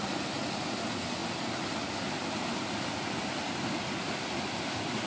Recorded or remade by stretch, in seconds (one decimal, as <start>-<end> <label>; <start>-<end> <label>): 0.0-5.1 recorded